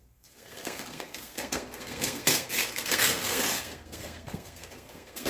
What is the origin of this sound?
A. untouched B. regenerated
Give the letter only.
B